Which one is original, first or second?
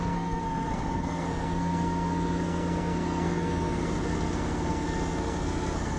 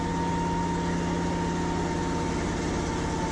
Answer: second